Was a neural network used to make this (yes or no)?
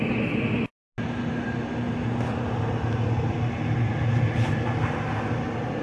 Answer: no